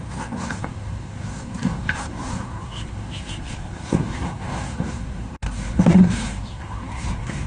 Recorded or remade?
remade